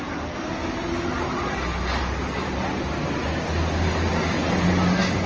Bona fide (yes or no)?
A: yes